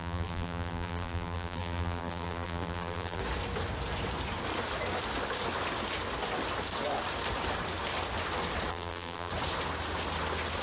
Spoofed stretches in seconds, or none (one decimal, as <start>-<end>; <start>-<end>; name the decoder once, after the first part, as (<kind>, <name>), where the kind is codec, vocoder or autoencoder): 0.0-3.2 (vocoder, BigVGAN v2); 8.7-9.3